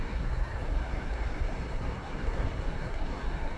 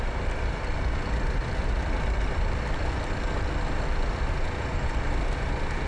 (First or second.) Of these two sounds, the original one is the second